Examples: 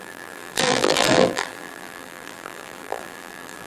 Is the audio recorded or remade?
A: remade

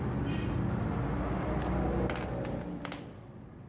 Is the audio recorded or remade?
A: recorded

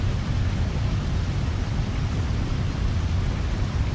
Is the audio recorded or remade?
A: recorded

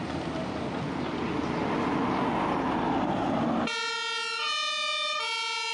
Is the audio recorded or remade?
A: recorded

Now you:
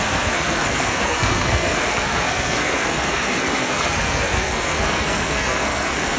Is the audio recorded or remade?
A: remade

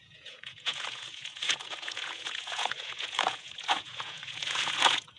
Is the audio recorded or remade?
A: remade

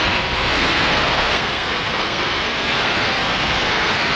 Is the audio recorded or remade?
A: remade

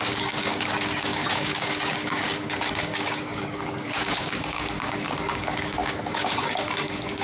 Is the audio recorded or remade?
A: remade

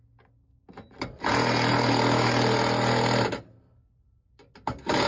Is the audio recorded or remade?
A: recorded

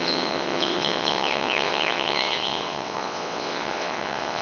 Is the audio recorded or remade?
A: remade